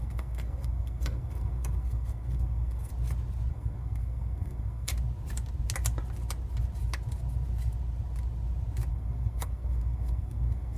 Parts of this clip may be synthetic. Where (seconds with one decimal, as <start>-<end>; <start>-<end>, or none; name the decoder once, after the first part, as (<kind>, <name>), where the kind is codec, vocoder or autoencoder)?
0.0-2.9 (codec, SNAC); 3.5-4.9; 8.9-10.8